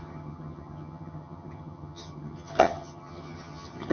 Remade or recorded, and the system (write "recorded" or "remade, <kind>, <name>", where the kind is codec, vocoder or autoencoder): remade, vocoder, HiFi-GAN